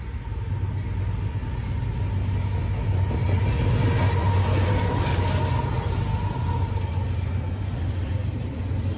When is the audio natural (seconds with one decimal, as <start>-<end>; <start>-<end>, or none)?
0.0-9.0